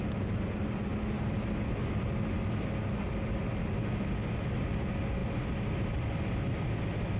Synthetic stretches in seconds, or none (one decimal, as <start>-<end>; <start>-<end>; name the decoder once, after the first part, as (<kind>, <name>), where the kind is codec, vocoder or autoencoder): none

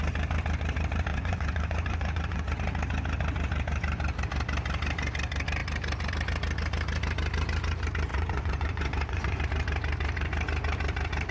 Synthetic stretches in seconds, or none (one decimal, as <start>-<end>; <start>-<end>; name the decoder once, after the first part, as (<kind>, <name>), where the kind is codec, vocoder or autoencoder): 1.1-2.4 (vocoder, Vocos); 8.1-9.4

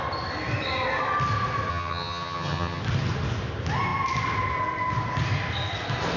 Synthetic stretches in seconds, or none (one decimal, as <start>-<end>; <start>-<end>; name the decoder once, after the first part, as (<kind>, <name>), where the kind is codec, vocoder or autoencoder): 1.7-2.8 (vocoder, HiFi-GAN)

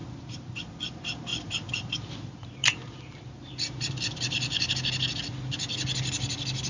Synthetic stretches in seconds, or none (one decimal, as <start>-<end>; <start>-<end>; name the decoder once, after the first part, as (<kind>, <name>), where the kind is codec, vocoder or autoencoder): 0.0-0.6 (vocoder, BigVGAN v2); 1.3-4.7

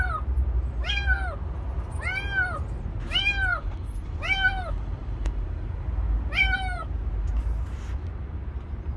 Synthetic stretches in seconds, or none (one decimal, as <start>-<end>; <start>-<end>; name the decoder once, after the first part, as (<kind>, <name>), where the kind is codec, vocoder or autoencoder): 3.5-4.2 (vocoder, BigVGAN v2); 5.0-5.9; 6.8-9.0